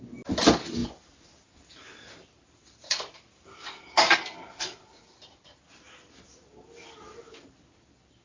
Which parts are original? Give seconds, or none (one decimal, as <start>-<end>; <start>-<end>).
0.0-0.8; 5.6-8.2